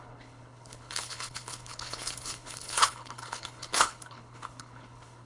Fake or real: fake